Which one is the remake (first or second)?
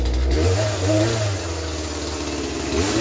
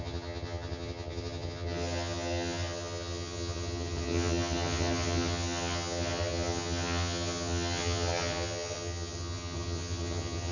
second